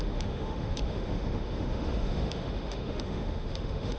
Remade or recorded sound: remade